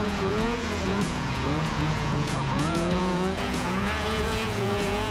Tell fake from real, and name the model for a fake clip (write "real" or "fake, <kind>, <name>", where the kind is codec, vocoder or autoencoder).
fake, vocoder, Vocos